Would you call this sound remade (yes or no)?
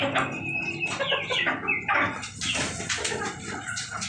no